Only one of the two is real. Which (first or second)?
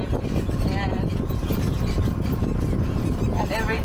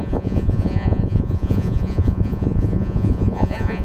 first